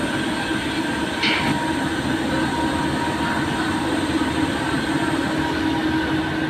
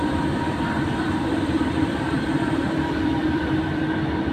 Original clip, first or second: first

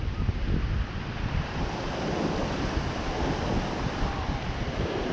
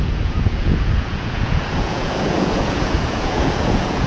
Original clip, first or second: first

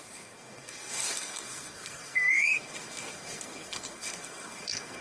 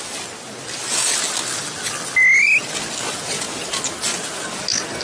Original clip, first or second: second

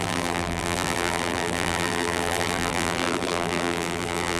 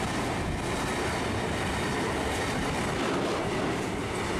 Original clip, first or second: second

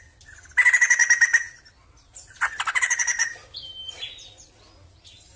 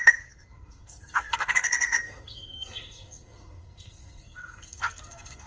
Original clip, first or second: first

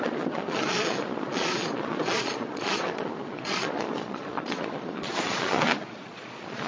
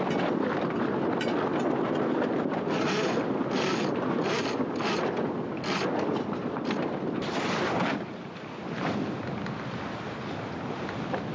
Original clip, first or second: second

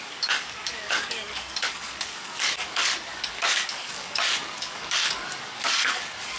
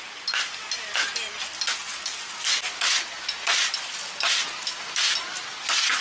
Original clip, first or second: second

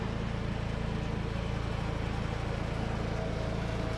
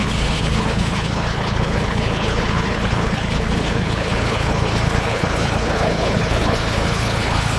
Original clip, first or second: first